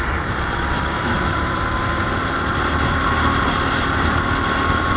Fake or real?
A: real